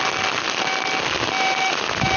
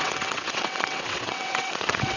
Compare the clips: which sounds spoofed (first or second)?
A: second